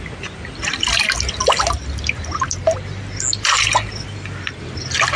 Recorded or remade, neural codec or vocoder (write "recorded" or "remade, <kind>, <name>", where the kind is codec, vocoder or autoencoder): recorded